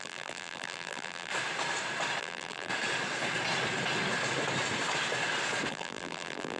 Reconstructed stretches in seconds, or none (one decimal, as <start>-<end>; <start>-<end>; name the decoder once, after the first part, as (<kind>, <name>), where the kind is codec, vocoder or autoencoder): 0.0-1.3 (vocoder, BigVGAN v2); 2.2-2.7; 5.7-6.6